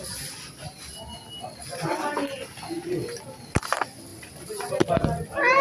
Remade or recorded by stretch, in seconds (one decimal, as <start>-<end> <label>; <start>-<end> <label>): 0.0-4.1 recorded; 4.1-4.7 remade; 4.7-5.6 recorded